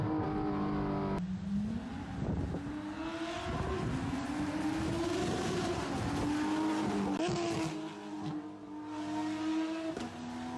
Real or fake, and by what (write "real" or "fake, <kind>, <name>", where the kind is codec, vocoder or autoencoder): real